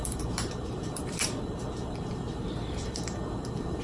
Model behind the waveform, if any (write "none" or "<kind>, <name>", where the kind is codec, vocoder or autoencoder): vocoder, BigVGAN v2